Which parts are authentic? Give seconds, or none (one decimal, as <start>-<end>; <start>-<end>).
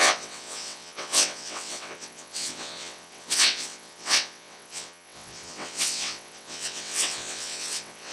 none